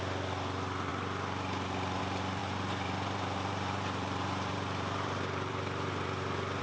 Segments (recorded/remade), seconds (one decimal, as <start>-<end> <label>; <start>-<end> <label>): 0.0-2.4 recorded; 2.4-6.6 remade